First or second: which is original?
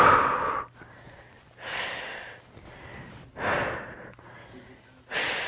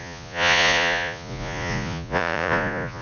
first